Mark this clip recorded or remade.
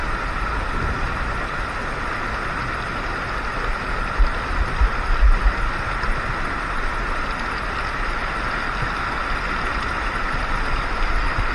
recorded